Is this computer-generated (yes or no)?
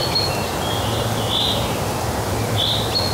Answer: no